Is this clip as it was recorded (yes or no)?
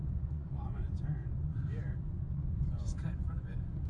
no